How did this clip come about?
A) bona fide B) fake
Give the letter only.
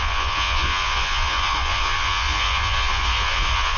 B